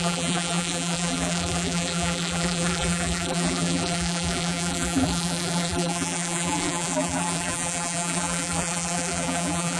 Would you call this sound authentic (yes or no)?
no